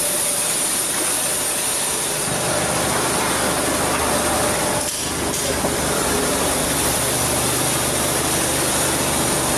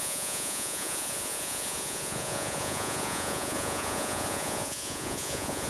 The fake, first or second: second